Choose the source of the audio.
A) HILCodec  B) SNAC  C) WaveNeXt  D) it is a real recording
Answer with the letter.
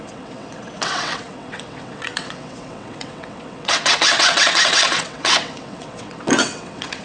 C